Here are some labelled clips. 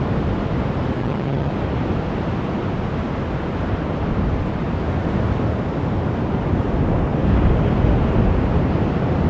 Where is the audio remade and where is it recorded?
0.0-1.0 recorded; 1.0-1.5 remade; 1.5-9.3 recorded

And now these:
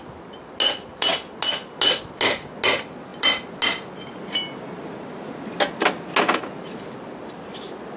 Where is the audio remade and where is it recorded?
0.0-8.0 recorded

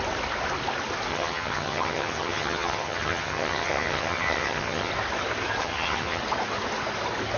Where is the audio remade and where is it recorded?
0.0-1.1 recorded; 1.1-4.9 remade; 4.9-5.6 recorded; 5.6-6.2 remade; 6.2-7.4 recorded